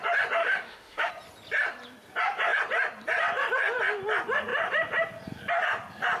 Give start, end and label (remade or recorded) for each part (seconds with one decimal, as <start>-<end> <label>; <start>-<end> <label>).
0.0-0.4 recorded; 0.4-1.1 remade; 1.1-6.2 recorded